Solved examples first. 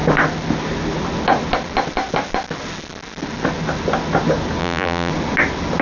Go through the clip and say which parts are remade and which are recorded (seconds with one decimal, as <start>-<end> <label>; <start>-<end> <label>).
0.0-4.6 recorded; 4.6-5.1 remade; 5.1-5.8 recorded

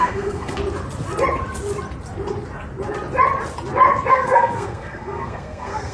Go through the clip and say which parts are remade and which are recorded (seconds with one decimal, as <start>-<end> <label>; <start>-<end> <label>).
0.0-0.6 remade; 0.6-4.1 recorded; 4.1-5.9 remade

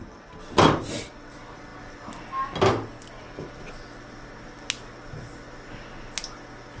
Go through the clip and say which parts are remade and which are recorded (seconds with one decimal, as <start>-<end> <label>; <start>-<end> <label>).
0.0-6.8 recorded

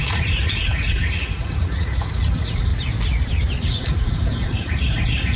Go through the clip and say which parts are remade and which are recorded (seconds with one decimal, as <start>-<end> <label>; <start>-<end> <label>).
0.0-2.7 remade; 2.7-3.7 recorded; 3.7-5.4 remade

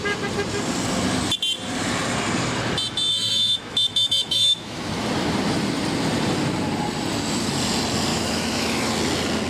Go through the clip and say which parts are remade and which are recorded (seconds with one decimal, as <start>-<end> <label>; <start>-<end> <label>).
0.0-3.1 recorded; 3.1-4.9 remade; 4.9-8.1 recorded; 8.1-8.9 remade; 8.9-9.5 recorded

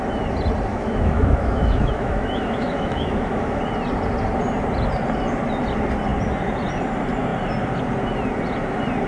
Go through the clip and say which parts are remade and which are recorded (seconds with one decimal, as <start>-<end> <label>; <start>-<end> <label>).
0.0-0.7 recorded; 0.7-3.6 remade; 3.6-9.1 recorded

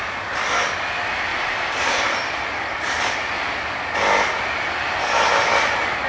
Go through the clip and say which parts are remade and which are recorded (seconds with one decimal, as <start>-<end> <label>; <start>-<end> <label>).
0.0-1.3 recorded; 1.3-3.3 remade; 3.3-6.1 recorded